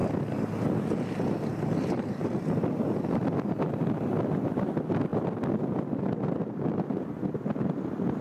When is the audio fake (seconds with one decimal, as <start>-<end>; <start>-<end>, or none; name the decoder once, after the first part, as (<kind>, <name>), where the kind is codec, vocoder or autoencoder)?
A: none